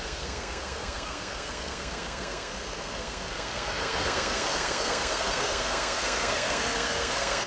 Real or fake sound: fake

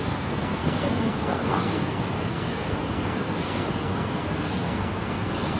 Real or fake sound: fake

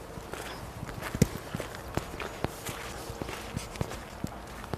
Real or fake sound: real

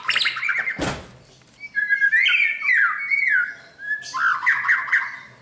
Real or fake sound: real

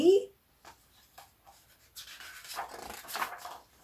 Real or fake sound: real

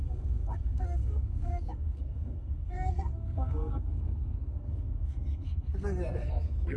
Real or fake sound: fake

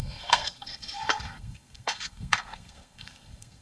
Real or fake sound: fake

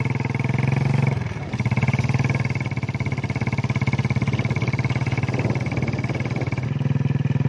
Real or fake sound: real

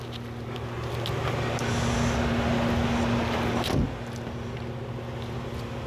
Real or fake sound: real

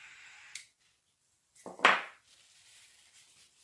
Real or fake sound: real